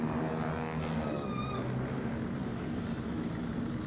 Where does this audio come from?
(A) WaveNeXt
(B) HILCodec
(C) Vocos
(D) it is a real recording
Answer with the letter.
D